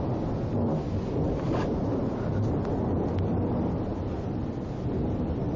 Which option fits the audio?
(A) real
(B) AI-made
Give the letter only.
A